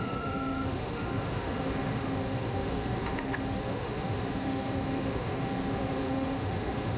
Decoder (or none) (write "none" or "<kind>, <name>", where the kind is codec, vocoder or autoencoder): autoencoder, DAC-VAE